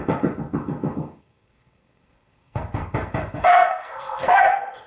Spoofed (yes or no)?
yes